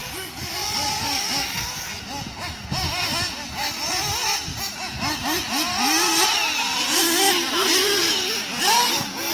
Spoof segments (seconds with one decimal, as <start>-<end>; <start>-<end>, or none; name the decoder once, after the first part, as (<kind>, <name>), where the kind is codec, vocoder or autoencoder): 0.0-2.0 (codec, DAC)